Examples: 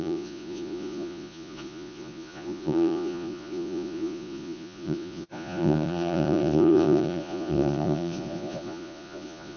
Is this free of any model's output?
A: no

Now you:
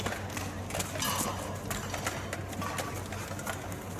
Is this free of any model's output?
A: yes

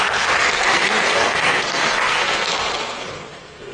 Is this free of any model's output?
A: no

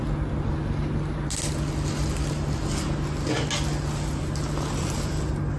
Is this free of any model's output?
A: yes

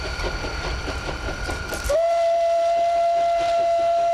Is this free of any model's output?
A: yes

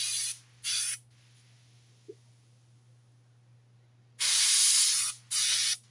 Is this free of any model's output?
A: yes